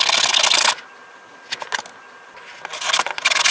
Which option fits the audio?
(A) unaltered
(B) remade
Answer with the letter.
A